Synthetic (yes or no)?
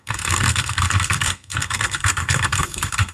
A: yes